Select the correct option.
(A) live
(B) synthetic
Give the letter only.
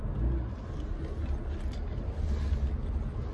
A